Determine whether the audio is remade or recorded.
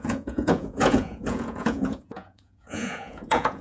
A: remade